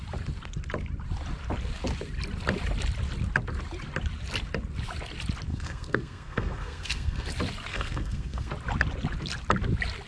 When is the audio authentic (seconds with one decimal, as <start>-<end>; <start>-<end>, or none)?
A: 0.0-5.5; 7.3-7.7; 8.5-10.1